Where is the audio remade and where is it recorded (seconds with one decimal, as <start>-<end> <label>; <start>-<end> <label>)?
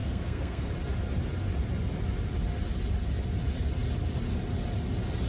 0.0-0.7 remade; 0.7-5.3 recorded